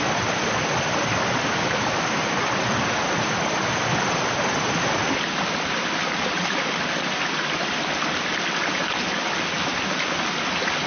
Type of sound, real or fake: real